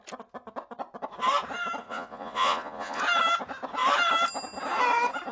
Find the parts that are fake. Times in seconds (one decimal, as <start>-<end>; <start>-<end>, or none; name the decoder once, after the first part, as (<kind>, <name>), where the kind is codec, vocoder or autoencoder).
1.8-3.0 (vocoder, Vocos)